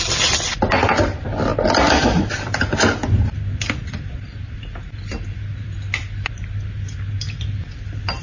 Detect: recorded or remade recorded